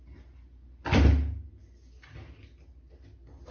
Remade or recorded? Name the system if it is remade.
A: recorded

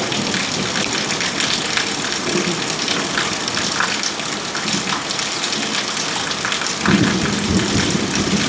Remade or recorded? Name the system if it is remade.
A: recorded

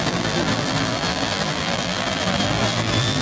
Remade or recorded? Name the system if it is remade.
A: remade, vocoder, BigVGAN v2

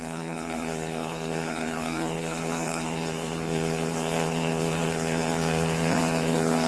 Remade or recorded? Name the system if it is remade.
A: remade, codec, SNAC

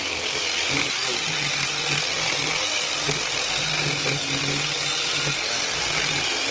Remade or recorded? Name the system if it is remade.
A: recorded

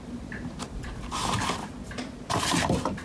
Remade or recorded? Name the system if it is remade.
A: recorded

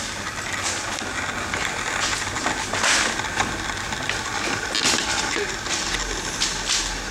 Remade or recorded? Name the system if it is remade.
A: recorded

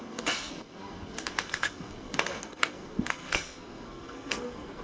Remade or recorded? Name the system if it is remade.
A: remade, codec, SNAC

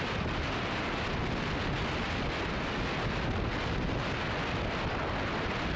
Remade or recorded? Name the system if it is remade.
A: recorded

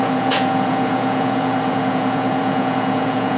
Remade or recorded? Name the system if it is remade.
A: remade, vocoder, Vocos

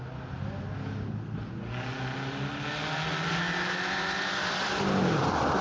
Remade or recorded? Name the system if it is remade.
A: recorded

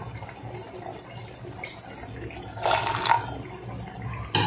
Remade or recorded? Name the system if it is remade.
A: recorded